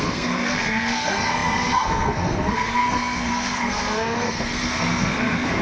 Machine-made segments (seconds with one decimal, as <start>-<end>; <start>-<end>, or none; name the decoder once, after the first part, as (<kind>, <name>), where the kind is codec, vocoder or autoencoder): 0.0-5.6 (codec, SNAC)